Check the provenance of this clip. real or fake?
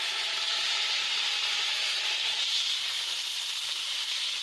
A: fake